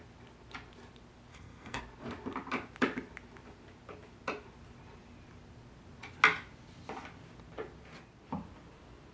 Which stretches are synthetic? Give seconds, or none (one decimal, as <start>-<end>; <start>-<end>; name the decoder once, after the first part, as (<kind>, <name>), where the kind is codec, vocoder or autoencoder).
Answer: 1.3-1.8 (codec, SNAC)